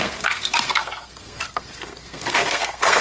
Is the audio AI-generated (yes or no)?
yes